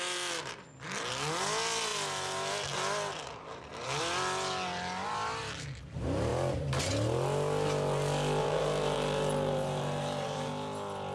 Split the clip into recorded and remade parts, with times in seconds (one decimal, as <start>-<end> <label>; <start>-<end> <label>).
0.0-8.4 recorded; 8.4-10.5 remade; 10.5-11.1 recorded